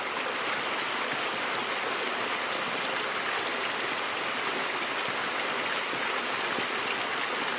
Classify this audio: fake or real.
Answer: real